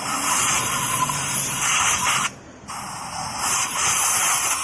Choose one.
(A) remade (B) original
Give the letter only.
A